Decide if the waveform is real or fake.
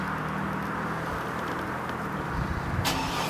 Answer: real